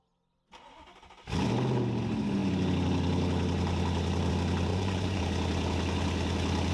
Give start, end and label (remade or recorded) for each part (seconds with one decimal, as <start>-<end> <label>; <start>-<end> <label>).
0.0-4.7 recorded; 4.7-5.2 remade; 5.2-6.7 recorded